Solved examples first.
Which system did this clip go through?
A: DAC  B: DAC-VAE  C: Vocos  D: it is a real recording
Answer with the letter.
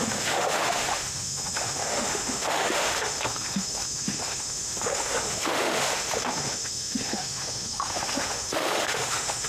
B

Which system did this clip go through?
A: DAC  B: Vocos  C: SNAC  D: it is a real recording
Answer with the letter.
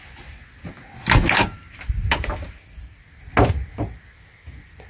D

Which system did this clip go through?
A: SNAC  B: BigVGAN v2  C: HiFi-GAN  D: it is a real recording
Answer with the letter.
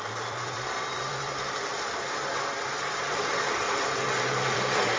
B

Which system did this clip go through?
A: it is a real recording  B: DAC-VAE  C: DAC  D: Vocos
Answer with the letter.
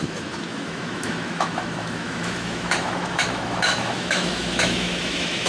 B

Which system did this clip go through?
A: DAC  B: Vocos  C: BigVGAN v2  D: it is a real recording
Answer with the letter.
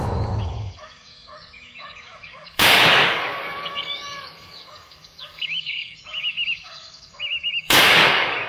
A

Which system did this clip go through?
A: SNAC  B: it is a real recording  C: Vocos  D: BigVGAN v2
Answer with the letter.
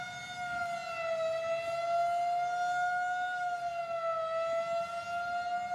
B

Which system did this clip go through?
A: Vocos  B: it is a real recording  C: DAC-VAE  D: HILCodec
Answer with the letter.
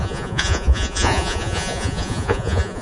A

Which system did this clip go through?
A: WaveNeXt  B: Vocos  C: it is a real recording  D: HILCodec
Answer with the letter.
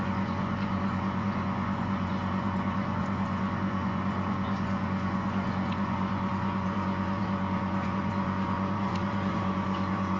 B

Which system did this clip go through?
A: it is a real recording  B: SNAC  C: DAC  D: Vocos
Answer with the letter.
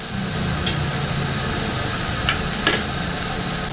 A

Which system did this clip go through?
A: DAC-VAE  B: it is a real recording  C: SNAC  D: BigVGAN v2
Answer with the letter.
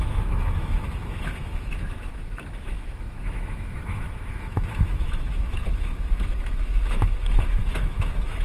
A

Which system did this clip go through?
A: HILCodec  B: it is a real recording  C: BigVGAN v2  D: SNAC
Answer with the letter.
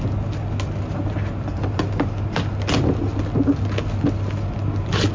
B